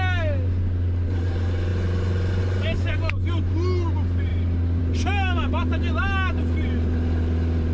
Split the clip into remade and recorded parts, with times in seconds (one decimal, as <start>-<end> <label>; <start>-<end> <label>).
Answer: 0.0-7.7 recorded